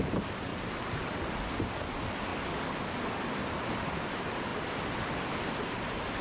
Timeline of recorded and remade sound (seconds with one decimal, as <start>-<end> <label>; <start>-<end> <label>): 0.0-0.5 recorded; 0.5-1.0 remade; 1.0-6.2 recorded